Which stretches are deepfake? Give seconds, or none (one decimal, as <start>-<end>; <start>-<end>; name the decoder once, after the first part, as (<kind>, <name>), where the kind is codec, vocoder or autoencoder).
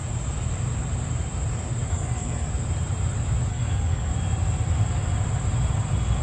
1.9-2.5 (codec, SNAC); 3.5-4.1